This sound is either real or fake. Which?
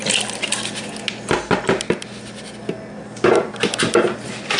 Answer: real